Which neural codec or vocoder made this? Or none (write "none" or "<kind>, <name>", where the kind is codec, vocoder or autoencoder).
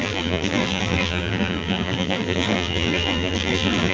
vocoder, BigVGAN v2